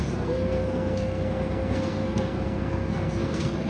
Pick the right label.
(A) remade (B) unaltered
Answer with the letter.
A